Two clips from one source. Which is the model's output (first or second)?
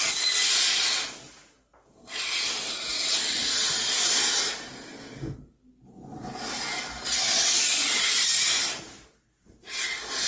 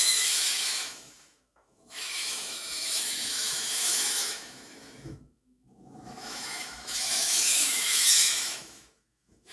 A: second